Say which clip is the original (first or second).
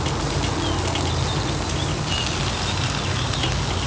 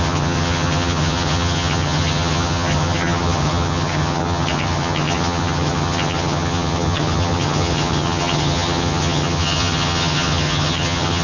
first